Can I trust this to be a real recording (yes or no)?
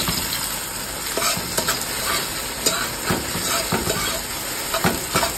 yes